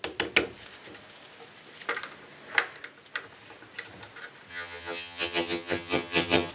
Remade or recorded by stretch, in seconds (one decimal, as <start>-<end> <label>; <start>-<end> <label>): 0.0-4.5 recorded; 4.5-6.5 remade